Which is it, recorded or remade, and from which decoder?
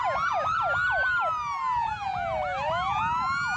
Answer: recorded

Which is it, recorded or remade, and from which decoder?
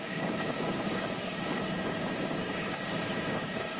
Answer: remade, codec, DAC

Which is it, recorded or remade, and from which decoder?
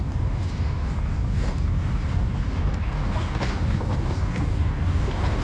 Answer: remade, codec, DAC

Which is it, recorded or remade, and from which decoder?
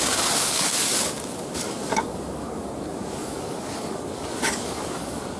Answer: remade, codec, DAC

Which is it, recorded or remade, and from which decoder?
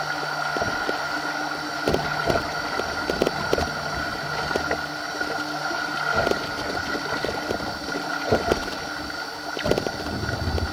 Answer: recorded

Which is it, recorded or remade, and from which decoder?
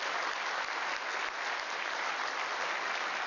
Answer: recorded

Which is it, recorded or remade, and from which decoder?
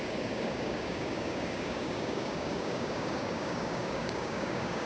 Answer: remade, codec, DAC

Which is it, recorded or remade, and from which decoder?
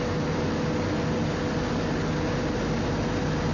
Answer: recorded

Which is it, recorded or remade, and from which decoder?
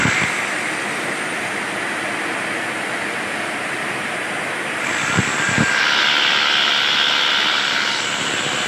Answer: recorded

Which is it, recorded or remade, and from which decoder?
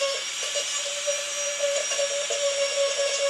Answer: recorded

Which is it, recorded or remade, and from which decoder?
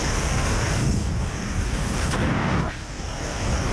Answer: remade, codec, DAC